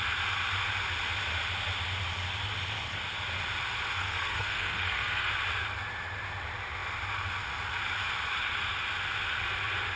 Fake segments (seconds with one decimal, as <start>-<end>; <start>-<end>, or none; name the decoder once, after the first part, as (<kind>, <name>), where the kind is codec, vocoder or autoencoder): 4.0-5.3 (codec, SNAC)